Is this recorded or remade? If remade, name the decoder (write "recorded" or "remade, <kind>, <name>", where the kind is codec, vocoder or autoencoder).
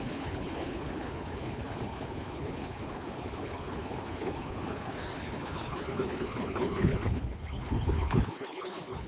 remade, codec, HILCodec